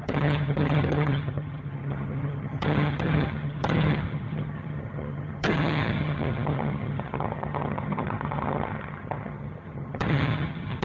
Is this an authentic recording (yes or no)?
no